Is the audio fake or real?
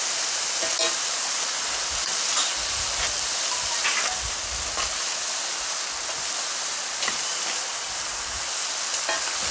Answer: real